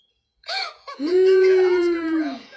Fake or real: fake